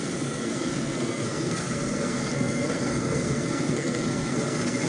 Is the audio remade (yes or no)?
yes